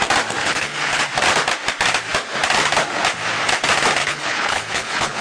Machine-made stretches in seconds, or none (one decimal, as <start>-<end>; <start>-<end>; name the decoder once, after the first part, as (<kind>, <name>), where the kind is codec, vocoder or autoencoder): 0.4-1.0 (codec, HILCodec); 4.0-5.2